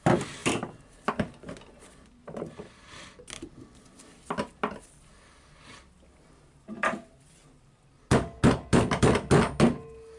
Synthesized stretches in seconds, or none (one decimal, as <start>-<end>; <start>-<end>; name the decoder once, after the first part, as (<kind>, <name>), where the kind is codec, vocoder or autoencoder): none